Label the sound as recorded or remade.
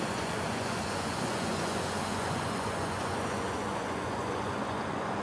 remade